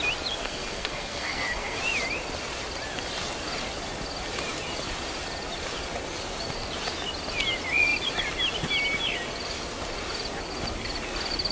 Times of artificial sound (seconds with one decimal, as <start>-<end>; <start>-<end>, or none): 0.4-1.8